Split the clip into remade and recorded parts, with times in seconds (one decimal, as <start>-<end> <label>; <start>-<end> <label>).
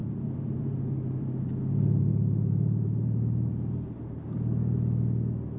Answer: 0.0-1.5 remade; 1.5-2.1 recorded; 2.1-4.2 remade; 4.2-5.6 recorded